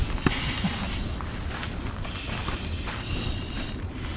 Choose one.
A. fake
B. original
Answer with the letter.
B